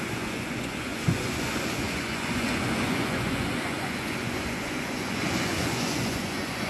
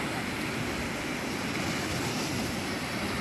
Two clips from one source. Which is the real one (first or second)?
second